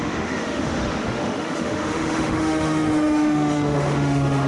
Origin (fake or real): fake